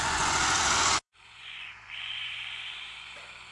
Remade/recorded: remade